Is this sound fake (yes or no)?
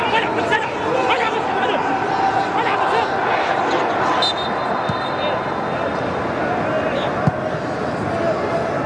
no